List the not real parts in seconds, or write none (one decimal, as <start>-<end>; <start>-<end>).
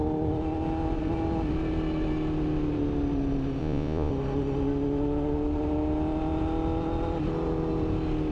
3.6-4.1